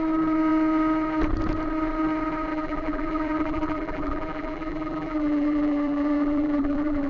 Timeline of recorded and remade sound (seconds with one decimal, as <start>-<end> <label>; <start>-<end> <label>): 0.0-2.5 recorded; 2.5-7.1 remade